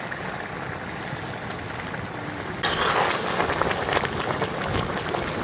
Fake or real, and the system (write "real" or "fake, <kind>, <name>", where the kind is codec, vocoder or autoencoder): real